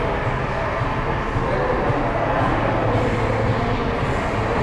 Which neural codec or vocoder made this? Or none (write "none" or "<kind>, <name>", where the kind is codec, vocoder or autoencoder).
none